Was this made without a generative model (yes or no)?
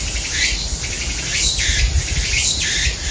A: yes